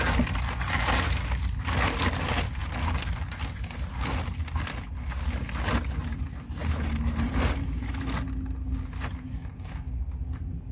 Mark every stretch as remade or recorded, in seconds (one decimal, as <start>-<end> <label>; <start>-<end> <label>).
0.0-6.0 recorded; 6.0-7.9 remade; 7.9-10.7 recorded